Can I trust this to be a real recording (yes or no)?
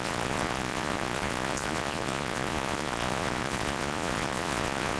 no